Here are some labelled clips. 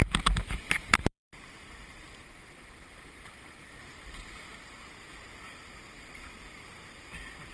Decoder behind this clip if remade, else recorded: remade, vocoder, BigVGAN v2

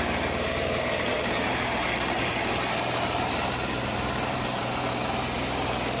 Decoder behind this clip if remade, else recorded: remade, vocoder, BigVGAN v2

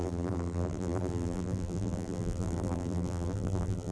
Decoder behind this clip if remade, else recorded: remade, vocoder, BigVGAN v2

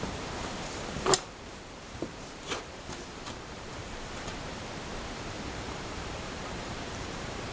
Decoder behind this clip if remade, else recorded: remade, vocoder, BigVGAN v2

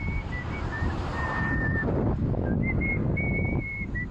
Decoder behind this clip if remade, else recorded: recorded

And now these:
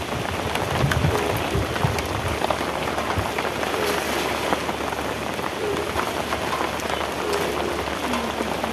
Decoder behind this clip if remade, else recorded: recorded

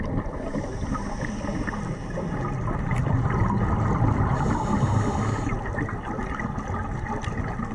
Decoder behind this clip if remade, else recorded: recorded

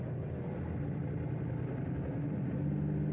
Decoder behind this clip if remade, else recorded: recorded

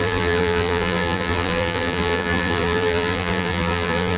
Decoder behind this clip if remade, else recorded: remade, vocoder, BigVGAN v2